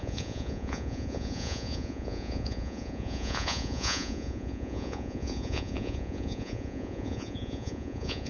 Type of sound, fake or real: fake